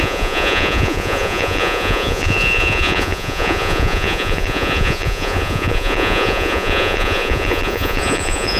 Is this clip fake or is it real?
fake